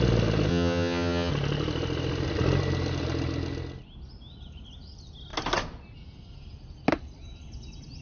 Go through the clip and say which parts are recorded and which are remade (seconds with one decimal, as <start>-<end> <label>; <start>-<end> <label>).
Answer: 0.0-0.5 recorded; 0.5-1.3 remade; 1.3-8.0 recorded